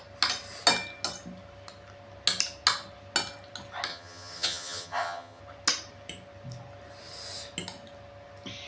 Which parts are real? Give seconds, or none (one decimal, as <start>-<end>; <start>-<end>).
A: 0.0-3.9; 5.4-8.7